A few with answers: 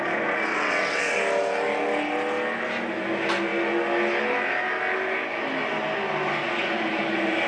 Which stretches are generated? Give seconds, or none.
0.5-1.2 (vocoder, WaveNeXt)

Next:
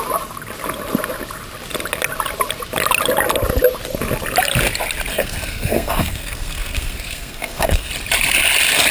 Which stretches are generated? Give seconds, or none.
5.1-7.9 (codec, SNAC)

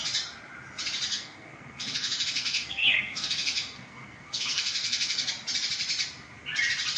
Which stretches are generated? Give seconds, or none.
1.1-5.3 (codec, SNAC)

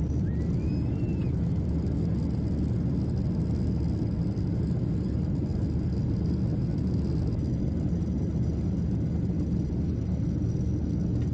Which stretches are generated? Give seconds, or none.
none

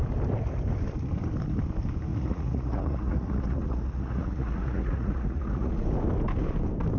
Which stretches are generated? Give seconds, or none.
2.1-5.7 (vocoder, Vocos)

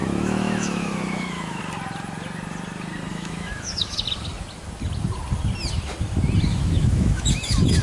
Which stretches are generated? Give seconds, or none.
0.0-1.6 (autoencoder, DAC-VAE); 3.1-4.0; 6.5-7.8

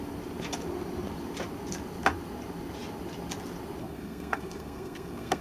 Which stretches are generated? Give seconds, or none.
3.8-5.4 (codec, SNAC)